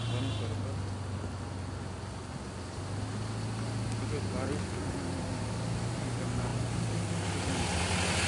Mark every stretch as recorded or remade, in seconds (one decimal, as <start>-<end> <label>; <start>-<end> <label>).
0.0-8.3 recorded